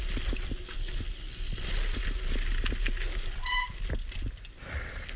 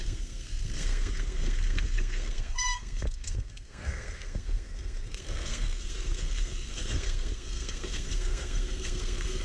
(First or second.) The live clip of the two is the first